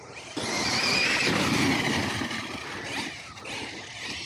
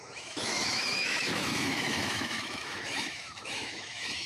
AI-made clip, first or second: second